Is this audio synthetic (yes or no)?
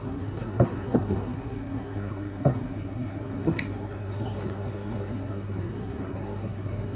yes